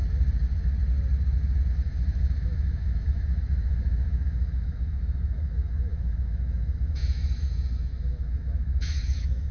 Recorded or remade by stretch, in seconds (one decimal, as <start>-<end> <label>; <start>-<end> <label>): 0.0-1.7 recorded; 1.7-9.5 remade